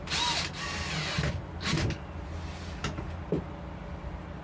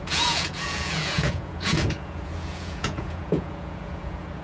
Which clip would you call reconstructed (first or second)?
second